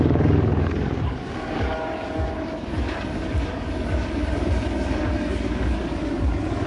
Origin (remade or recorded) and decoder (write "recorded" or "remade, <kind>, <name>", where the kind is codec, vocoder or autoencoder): remade, codec, DAC